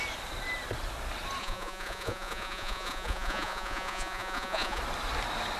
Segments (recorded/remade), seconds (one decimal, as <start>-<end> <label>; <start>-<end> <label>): 0.0-1.4 recorded; 1.4-4.8 remade; 4.8-5.6 recorded